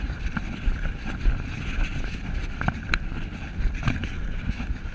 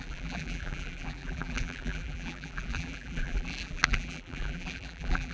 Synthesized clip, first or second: second